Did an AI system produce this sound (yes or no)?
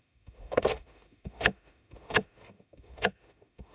yes